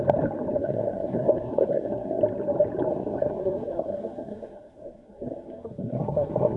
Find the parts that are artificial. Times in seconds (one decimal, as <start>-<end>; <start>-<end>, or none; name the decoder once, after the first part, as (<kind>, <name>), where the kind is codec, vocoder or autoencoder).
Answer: 0.6-2.2 (codec, SNAC); 2.9-6.6